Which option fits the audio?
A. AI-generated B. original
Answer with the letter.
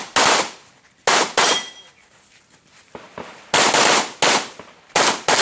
B